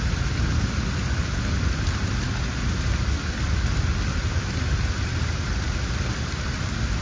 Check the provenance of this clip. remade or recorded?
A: recorded